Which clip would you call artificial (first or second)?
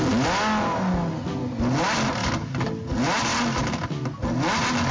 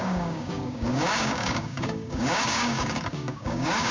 second